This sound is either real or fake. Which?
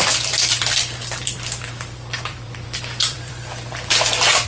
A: fake